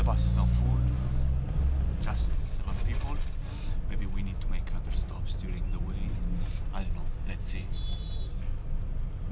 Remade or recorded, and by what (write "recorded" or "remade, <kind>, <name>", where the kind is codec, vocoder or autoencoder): recorded